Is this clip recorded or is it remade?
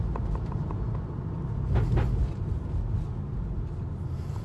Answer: recorded